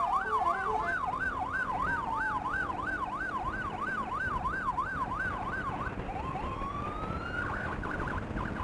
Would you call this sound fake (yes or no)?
no